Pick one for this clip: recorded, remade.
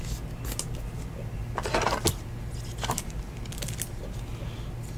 recorded